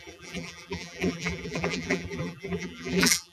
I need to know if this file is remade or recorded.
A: remade